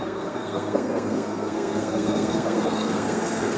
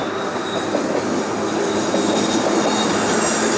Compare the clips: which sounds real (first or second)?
second